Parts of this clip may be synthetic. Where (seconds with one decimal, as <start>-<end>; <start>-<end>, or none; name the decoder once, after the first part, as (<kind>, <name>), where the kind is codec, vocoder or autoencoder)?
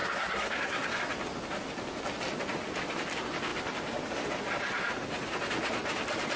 0.0-1.0 (codec, SNAC)